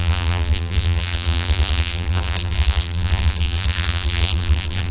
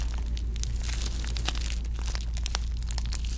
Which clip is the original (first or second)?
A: second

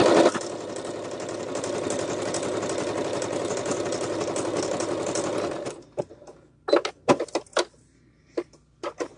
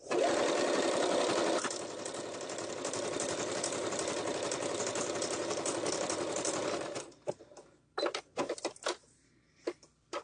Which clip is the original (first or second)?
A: first